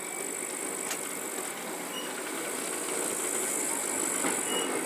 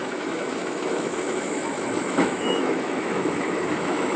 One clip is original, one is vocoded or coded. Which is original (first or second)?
first